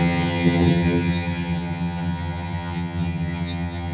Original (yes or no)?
no